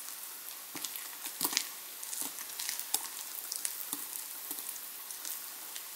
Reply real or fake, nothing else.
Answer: real